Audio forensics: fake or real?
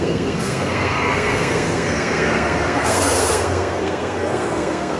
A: fake